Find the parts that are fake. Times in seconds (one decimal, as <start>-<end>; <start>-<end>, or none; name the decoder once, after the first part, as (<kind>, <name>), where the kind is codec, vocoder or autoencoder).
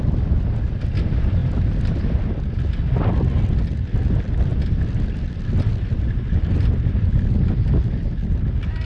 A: none